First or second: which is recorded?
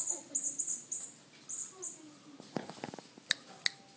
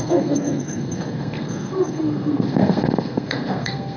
first